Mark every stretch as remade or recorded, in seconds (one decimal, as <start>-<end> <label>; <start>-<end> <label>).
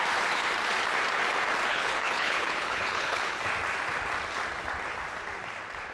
0.0-1.7 recorded; 1.7-3.4 remade; 3.4-5.9 recorded